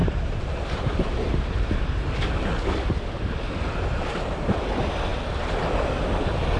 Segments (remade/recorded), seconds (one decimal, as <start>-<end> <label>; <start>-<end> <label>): 0.0-2.1 remade; 2.1-6.6 recorded